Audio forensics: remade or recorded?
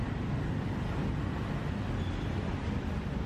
recorded